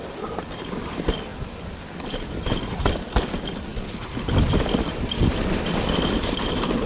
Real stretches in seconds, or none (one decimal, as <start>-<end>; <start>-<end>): 0.0-1.3; 2.9-3.7; 6.5-6.9